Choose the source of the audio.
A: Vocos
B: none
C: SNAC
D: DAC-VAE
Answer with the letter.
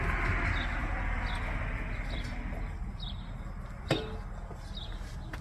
B